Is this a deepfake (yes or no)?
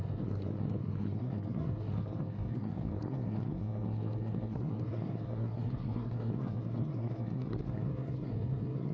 yes